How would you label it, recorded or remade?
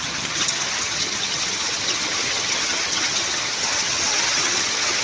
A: remade